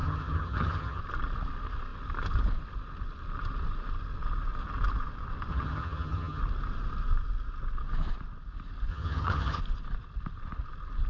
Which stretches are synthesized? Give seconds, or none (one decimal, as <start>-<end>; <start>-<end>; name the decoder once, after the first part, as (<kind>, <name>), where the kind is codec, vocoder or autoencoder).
0.0-1.0 (vocoder, HiFi-GAN); 5.5-6.4; 8.9-9.6